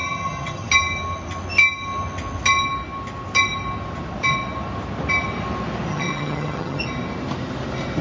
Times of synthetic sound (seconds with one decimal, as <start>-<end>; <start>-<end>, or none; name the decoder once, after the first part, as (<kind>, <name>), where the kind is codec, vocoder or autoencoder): 0.0-0.7 (vocoder, HiFi-GAN); 5.9-6.8